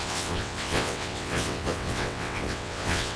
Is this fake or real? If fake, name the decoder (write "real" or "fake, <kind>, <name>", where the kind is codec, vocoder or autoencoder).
fake, vocoder, WaveNeXt